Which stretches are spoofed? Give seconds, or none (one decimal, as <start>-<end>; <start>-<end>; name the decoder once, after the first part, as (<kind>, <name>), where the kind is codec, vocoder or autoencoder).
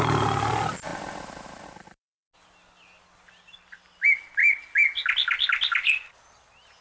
none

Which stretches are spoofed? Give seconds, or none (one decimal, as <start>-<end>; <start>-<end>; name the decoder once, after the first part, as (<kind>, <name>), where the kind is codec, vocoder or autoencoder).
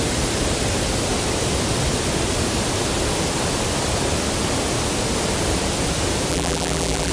6.3-7.1 (vocoder, BigVGAN v2)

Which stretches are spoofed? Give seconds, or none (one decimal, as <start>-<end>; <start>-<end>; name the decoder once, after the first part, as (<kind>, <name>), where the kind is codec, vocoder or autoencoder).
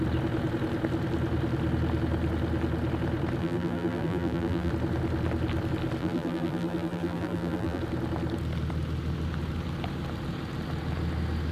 3.4-4.7 (vocoder, BigVGAN v2); 6.0-7.8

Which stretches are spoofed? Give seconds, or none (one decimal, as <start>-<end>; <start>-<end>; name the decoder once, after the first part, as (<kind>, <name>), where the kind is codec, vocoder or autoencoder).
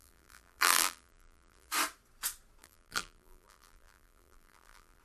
0.0-1.7 (vocoder, BigVGAN v2); 2.6-5.0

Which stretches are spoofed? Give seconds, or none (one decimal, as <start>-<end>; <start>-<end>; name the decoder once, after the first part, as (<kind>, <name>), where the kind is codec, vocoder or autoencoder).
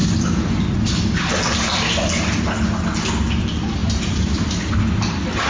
3.8-4.6 (vocoder, BigVGAN v2)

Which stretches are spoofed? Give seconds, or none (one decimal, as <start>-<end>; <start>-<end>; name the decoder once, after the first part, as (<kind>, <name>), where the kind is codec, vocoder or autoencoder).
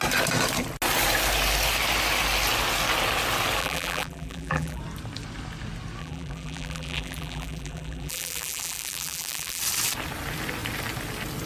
3.6-4.8 (vocoder, BigVGAN v2); 6.0-9.6